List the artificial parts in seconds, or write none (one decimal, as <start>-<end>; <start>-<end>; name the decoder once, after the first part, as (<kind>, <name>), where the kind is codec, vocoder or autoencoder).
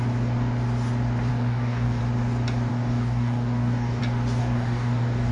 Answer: 1.3-2.0 (codec, DAC); 2.7-4.0; 4.4-5.3